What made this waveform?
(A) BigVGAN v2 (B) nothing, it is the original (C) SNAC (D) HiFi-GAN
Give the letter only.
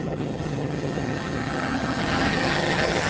D